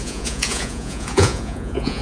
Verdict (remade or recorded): remade